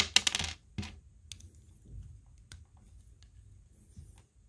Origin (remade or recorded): recorded